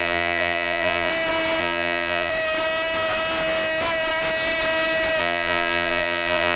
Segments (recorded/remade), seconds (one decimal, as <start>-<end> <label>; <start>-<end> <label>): 0.0-1.1 remade; 1.1-1.6 recorded; 1.6-2.3 remade; 2.3-5.2 recorded; 5.2-6.6 remade